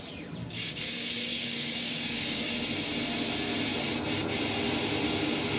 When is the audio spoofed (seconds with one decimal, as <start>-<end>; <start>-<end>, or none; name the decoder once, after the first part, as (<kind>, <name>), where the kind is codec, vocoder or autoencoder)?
0.4-2.5 (codec, DAC)